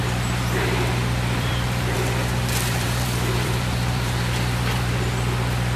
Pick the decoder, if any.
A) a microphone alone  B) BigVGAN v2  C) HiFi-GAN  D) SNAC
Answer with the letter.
B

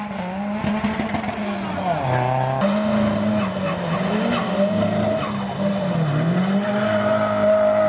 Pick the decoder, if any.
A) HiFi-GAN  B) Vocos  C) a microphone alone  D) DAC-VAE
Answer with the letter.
C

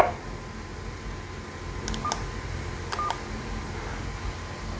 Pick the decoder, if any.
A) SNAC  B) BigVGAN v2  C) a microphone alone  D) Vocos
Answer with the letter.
C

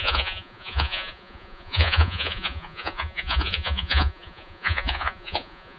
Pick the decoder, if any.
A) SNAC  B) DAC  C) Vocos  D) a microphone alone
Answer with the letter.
C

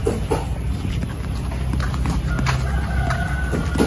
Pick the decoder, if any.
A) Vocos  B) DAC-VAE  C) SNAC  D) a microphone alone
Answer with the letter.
D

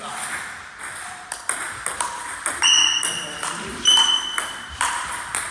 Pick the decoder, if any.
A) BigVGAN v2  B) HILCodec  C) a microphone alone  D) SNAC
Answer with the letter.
C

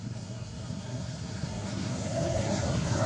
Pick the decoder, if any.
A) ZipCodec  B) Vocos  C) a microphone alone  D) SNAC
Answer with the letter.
D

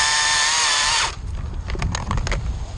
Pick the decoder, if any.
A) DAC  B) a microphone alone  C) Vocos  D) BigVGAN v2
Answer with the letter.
B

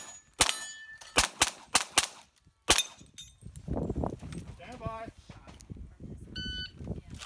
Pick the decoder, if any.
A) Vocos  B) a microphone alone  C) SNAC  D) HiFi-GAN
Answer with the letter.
B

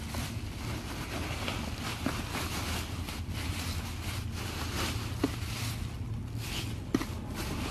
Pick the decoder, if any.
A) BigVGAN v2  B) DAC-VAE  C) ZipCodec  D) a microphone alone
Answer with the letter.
D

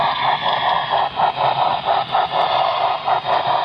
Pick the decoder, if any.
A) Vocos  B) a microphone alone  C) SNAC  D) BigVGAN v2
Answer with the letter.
B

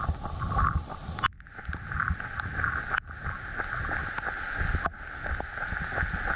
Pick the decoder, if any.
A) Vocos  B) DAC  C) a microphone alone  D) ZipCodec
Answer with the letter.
C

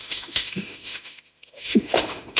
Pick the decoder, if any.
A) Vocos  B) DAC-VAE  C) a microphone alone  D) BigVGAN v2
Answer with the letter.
B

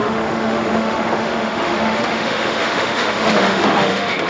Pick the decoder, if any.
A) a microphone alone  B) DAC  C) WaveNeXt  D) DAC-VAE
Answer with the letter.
D